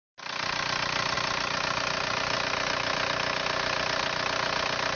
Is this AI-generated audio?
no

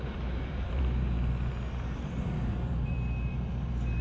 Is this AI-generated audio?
yes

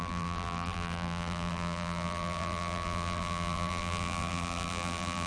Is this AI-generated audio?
yes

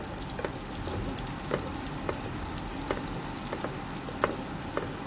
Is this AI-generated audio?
no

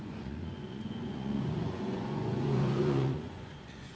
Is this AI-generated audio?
yes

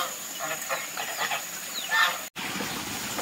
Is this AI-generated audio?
no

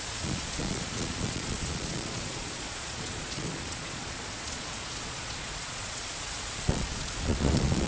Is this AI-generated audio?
yes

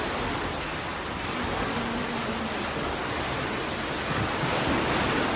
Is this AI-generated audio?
no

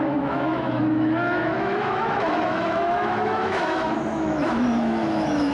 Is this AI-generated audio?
yes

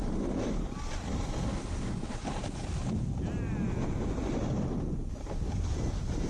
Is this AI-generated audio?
no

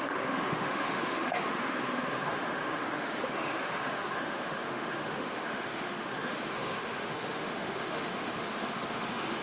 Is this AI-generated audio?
yes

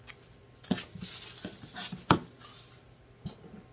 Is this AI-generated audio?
no